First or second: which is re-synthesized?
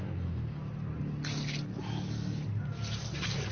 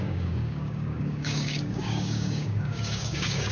second